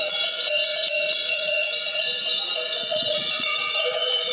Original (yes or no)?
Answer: no